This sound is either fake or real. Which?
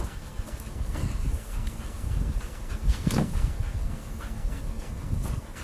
fake